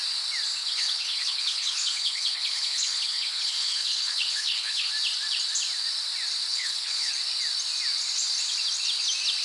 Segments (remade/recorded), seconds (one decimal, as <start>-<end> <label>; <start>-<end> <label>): 0.0-0.6 recorded; 0.6-4.9 remade; 4.9-6.5 recorded; 6.5-7.1 remade; 7.1-9.4 recorded

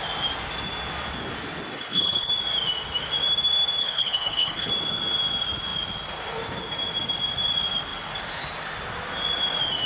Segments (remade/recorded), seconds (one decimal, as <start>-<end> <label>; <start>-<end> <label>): 0.0-1.7 recorded; 1.7-2.3 remade; 2.3-3.8 recorded; 3.8-4.7 remade; 4.7-9.9 recorded

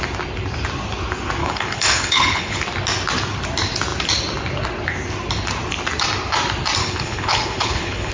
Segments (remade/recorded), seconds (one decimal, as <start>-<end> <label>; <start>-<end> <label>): 0.0-1.4 recorded; 1.4-2.6 remade; 2.6-6.8 recorded; 6.8-8.1 remade

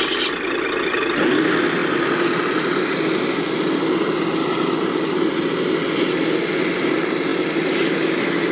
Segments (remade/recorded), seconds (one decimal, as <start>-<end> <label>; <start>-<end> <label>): 0.0-8.5 recorded

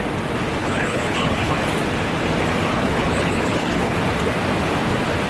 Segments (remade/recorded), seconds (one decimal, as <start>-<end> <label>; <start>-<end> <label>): 0.0-0.6 recorded; 0.6-1.5 remade; 1.5-2.7 recorded; 2.7-4.0 remade; 4.0-5.3 recorded

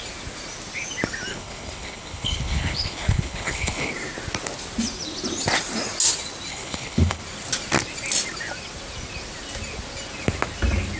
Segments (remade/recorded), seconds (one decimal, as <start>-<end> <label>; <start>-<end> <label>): 0.0-1.3 recorded; 1.3-3.9 remade; 3.9-6.5 recorded; 6.5-7.2 remade; 7.2-11.0 recorded

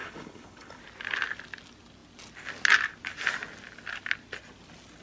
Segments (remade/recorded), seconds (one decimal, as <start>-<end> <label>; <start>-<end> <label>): 0.0-0.8 remade; 0.8-5.0 recorded